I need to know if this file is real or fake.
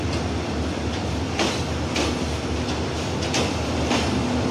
real